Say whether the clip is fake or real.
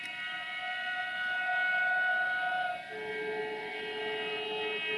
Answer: real